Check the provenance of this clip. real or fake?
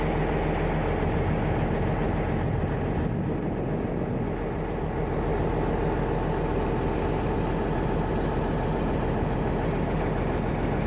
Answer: real